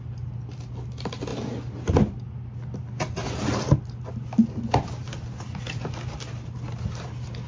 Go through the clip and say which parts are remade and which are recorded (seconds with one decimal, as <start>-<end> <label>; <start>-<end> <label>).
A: 0.0-7.5 recorded